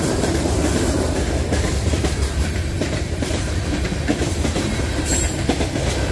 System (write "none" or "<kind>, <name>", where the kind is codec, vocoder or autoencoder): vocoder, BigVGAN v2